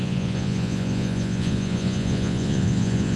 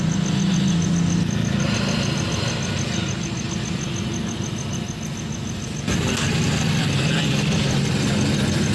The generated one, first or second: first